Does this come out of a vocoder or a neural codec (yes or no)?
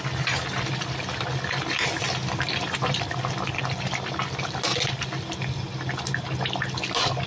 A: no